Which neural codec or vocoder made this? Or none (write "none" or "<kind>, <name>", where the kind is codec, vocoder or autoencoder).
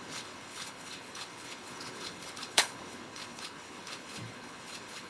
codec, HILCodec